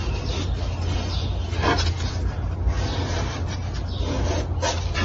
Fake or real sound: real